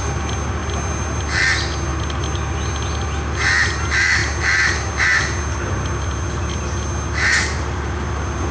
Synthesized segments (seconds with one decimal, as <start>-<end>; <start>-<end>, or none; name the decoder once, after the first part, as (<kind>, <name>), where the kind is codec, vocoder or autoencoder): none